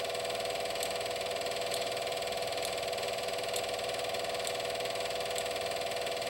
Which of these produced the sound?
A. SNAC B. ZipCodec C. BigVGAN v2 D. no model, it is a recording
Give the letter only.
D